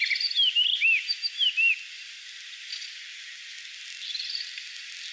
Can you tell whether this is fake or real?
real